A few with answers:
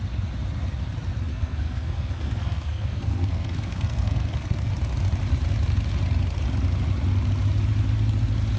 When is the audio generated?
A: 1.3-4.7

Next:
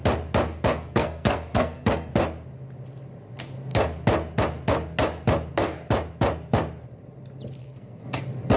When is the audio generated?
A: 0.7-2.1; 7.6-8.2

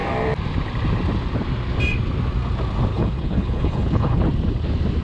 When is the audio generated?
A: 2.9-4.2